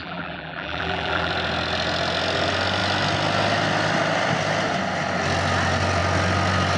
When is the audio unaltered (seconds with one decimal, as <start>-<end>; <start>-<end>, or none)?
1.3-6.8